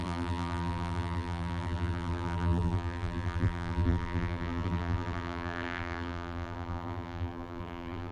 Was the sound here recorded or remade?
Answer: remade